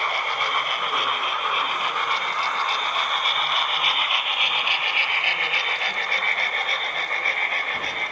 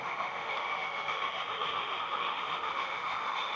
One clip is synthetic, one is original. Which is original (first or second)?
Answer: first